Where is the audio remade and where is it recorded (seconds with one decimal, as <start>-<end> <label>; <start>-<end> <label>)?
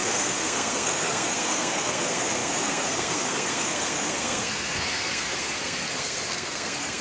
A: 0.0-7.0 remade